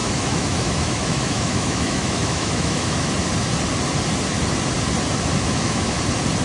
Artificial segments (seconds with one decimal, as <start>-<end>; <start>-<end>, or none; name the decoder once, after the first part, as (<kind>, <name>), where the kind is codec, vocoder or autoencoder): 0.0-3.1 (autoencoder, DAC-VAE); 5.3-6.0